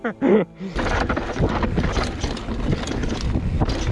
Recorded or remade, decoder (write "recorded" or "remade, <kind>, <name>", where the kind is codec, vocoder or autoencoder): recorded